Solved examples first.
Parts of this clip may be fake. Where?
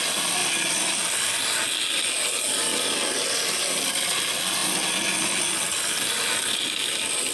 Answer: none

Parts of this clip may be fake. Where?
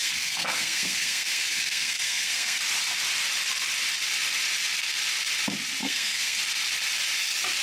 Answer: 0.0-2.6 (codec, SNAC); 5.8-6.4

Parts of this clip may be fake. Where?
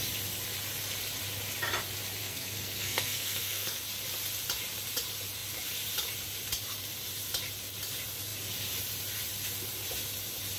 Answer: 2.2-3.8 (codec, SNAC)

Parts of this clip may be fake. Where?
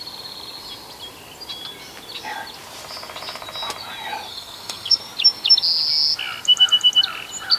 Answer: 4.3-5.0 (codec, SNAC)